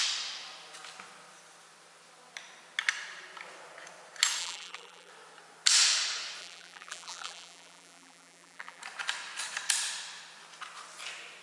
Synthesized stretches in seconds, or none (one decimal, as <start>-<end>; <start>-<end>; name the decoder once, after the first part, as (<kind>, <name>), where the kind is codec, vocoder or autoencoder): 4.4-5.1 (vocoder, BigVGAN v2); 6.4-8.8